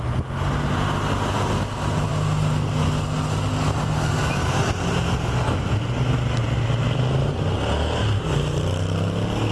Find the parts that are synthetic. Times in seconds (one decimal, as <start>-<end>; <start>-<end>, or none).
none